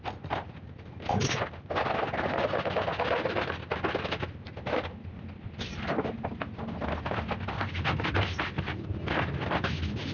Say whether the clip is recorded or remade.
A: recorded